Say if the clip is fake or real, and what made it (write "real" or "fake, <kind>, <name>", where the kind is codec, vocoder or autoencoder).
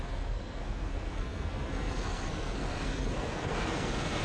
fake, codec, SNAC